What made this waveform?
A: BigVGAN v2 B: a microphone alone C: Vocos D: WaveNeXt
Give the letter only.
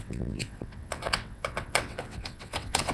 D